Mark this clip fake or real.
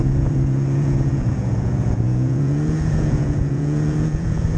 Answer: fake